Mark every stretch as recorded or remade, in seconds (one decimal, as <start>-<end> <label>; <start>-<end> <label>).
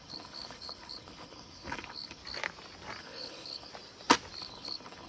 0.0-2.2 remade; 2.2-3.0 recorded; 3.0-3.7 remade; 3.7-4.4 recorded; 4.4-5.1 remade